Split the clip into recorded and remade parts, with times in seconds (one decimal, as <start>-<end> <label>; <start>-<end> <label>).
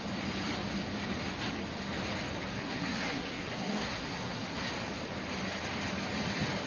0.0-2.5 recorded; 2.5-4.7 remade; 4.7-6.7 recorded